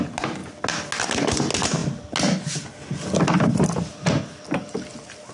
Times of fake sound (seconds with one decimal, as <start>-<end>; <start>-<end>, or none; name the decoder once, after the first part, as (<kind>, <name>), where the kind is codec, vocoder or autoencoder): none